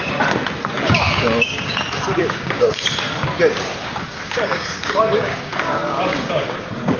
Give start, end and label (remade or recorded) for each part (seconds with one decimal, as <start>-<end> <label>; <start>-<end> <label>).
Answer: 0.0-0.8 recorded; 0.8-1.8 remade; 1.8-2.2 recorded; 2.2-2.8 remade; 2.8-3.8 recorded; 3.8-6.5 remade; 6.5-7.0 recorded